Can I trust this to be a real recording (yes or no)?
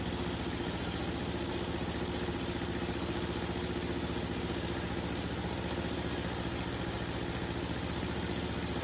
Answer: yes